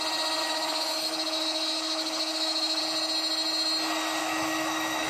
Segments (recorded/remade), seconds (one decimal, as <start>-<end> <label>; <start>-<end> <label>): 0.0-0.4 recorded; 0.4-2.8 remade; 2.8-4.2 recorded; 4.2-5.1 remade